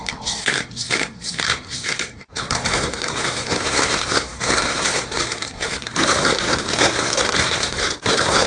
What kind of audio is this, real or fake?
fake